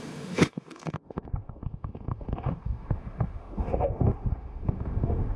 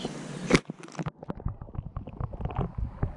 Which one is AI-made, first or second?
first